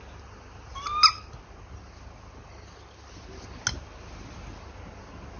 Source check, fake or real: real